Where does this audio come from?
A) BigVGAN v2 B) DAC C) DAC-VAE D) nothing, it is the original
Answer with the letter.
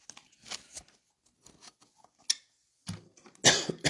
D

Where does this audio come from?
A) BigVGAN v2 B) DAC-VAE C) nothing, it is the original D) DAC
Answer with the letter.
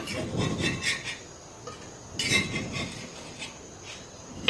C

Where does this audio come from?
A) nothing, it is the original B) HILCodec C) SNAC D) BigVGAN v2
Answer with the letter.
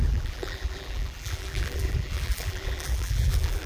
D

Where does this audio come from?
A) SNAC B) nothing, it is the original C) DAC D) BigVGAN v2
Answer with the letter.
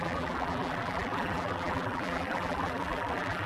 D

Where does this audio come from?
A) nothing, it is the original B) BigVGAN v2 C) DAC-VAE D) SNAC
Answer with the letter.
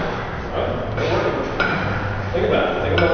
A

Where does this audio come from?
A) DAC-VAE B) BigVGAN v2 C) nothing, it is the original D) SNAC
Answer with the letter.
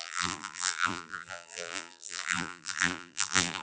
B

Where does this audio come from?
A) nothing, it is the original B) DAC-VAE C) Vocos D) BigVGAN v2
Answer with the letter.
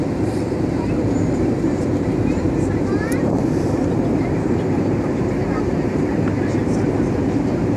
D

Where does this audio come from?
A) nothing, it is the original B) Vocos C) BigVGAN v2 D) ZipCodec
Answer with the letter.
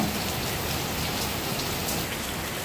A